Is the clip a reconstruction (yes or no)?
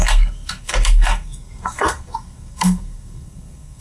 yes